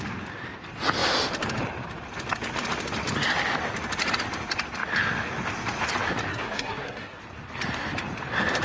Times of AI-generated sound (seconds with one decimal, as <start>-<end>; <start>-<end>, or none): 6.3-7.2